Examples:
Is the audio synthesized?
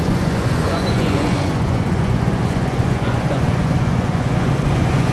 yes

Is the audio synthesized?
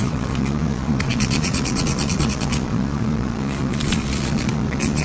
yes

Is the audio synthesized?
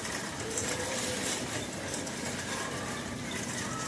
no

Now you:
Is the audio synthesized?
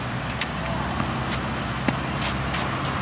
no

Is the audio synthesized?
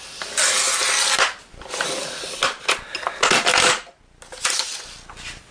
no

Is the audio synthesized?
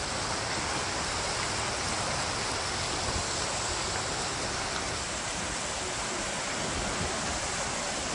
no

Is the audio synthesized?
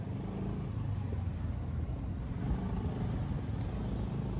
no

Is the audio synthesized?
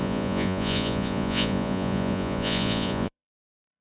yes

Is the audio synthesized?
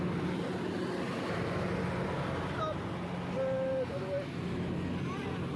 no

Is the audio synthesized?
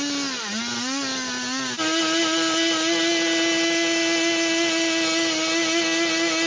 no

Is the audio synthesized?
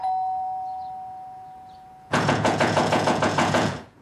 yes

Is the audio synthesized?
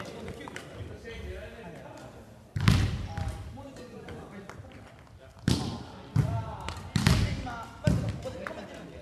no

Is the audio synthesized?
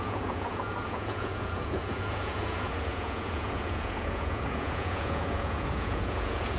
yes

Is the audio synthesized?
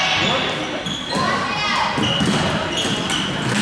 no